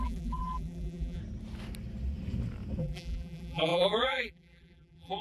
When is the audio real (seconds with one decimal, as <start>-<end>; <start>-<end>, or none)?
1.2-2.8